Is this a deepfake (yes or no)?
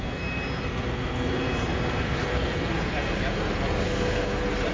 no